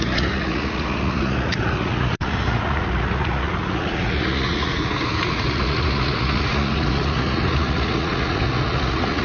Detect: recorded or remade remade